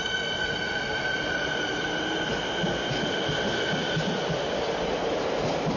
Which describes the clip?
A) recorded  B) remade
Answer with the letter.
A